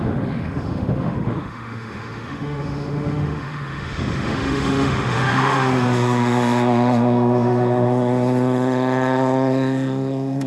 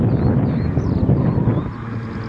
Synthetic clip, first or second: first